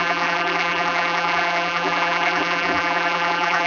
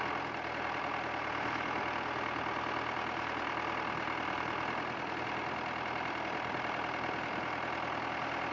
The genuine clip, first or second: second